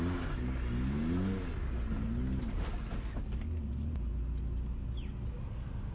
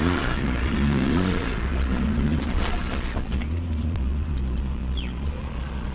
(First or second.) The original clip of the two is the first